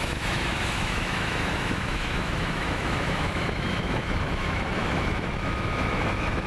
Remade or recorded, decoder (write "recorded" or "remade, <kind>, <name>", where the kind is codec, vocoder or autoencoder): remade, autoencoder, DAC-VAE